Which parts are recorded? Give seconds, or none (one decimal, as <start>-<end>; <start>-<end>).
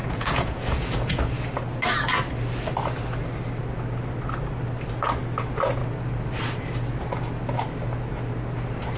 1.2-9.0